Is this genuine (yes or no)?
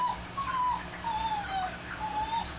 yes